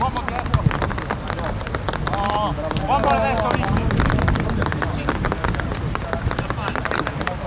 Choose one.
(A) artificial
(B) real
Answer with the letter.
B